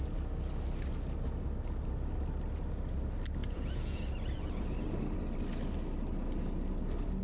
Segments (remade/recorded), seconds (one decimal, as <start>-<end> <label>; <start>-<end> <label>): 0.0-3.4 recorded; 3.4-4.0 remade; 4.0-7.2 recorded